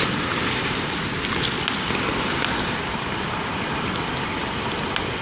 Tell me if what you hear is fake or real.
real